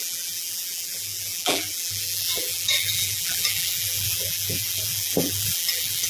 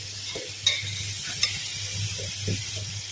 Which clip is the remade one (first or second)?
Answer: first